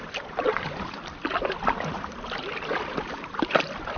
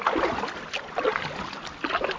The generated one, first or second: first